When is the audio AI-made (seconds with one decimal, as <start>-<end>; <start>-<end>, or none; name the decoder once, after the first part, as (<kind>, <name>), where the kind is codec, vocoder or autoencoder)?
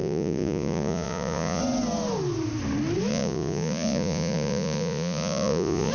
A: 0.0-1.6 (vocoder, Vocos); 3.1-5.9